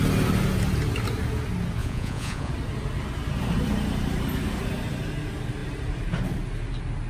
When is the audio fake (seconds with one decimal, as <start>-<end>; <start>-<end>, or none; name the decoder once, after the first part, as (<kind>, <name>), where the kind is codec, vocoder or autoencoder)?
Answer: 1.8-2.5 (vocoder, Vocos)